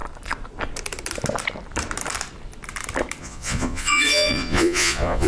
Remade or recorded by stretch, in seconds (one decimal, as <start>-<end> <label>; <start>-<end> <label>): 0.0-3.2 recorded; 3.2-5.3 remade